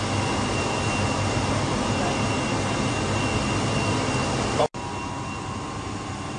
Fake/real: real